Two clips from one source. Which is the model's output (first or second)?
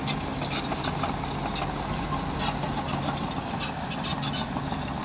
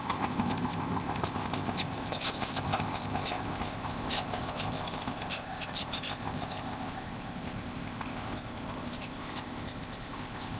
second